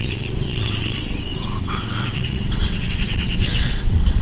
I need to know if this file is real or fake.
fake